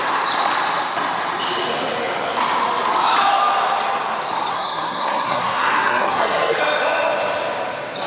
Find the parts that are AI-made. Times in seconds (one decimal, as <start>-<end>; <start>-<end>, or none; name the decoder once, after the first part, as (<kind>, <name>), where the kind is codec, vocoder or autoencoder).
4.5-6.6 (codec, SNAC)